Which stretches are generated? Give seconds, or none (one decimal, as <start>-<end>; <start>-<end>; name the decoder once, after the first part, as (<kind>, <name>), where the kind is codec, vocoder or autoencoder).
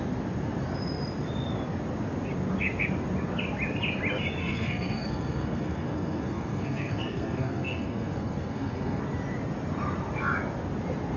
4.4-9.0 (codec, SNAC)